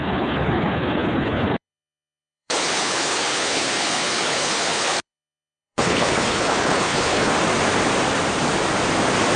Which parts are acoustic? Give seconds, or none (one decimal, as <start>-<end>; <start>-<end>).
7.3-9.4